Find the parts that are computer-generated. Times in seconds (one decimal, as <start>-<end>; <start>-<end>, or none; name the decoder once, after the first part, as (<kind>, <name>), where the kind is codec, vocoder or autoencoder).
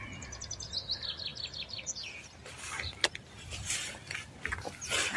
none